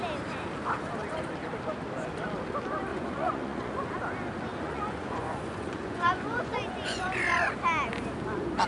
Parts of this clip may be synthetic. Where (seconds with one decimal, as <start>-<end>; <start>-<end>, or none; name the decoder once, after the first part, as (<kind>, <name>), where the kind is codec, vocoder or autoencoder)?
2.9-3.9 (vocoder, Vocos); 4.5-7.5